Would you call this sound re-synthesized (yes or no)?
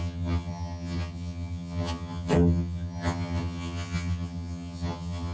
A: yes